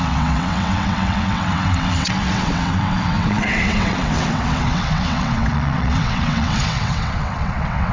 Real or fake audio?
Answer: fake